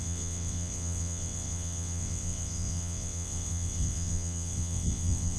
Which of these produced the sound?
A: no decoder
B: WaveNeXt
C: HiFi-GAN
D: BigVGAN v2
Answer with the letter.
B